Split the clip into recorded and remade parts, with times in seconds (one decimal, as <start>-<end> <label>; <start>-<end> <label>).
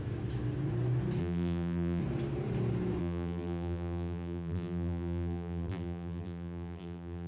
0.0-1.2 recorded; 1.2-2.0 remade; 2.0-3.0 recorded; 3.0-7.3 remade